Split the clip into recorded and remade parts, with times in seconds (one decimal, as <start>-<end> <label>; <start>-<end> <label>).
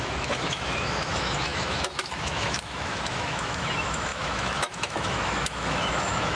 0.0-6.4 remade